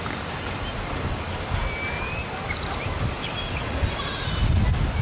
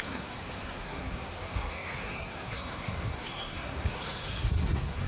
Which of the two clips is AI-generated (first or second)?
second